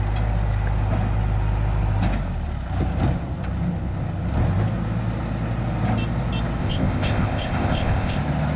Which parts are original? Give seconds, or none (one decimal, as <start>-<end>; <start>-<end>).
0.0-6.6; 8.2-8.6